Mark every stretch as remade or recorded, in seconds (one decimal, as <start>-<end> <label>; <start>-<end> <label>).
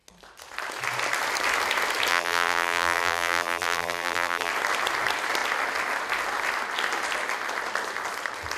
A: 0.0-2.1 recorded; 2.1-4.5 remade; 4.5-8.6 recorded